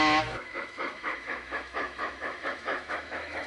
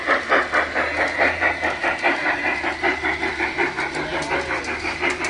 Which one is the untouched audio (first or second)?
second